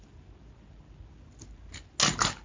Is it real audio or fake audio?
real